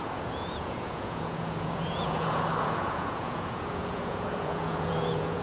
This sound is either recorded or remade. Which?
remade